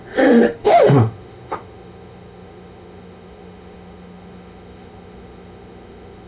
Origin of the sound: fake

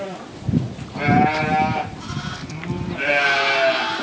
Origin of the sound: real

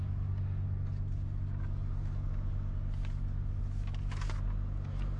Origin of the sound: real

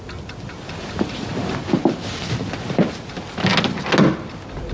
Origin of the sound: real